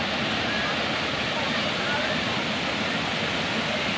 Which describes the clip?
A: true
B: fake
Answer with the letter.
A